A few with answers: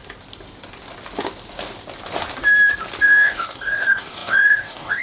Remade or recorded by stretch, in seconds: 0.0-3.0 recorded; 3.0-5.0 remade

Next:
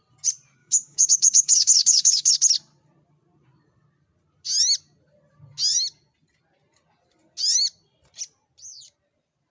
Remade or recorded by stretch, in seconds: 0.0-0.6 recorded; 0.6-2.3 remade; 2.3-9.5 recorded

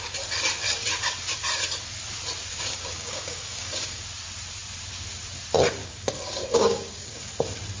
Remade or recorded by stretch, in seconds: 0.0-2.5 recorded; 2.5-4.0 remade; 4.0-5.8 recorded; 5.8-7.3 remade; 7.3-7.8 recorded

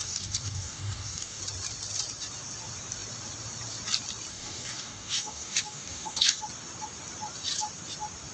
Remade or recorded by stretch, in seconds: 0.0-1.4 remade; 1.4-4.3 recorded; 4.3-6.4 remade; 6.4-8.3 recorded

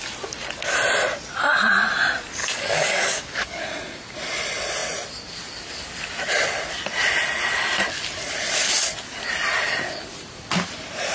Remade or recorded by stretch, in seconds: 0.0-2.4 recorded; 2.4-3.6 remade; 3.6-11.1 recorded

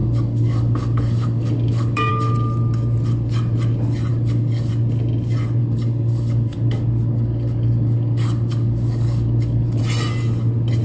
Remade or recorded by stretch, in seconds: 0.0-2.1 remade; 2.1-4.1 recorded; 4.1-4.7 remade; 4.7-5.6 recorded; 5.6-9.8 remade; 9.8-10.8 recorded